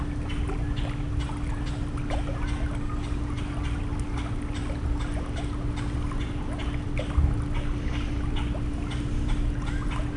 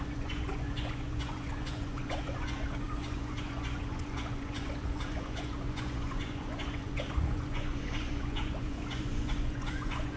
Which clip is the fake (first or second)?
second